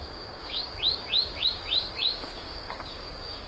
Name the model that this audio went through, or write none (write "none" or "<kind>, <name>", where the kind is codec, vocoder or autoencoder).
codec, DAC